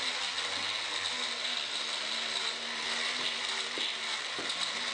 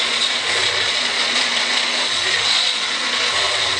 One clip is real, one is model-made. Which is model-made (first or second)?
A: second